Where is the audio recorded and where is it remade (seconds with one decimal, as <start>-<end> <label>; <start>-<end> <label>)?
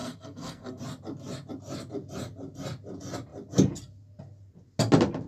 0.0-0.8 remade; 0.8-5.3 recorded